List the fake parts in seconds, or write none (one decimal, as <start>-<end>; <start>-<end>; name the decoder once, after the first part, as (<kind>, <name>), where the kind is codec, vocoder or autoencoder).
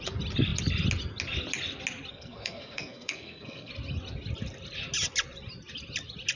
2.1-3.7 (codec, SNAC)